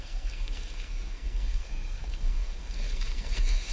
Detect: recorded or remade remade